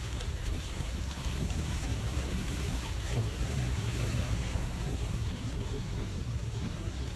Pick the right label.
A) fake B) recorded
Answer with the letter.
A